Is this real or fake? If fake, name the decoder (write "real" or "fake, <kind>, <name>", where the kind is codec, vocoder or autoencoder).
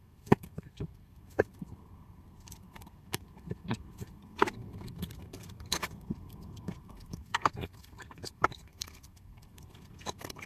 fake, codec, SNAC